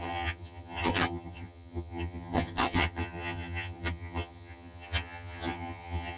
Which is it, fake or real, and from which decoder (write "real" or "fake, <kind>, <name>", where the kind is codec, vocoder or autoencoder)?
fake, vocoder, HiFi-GAN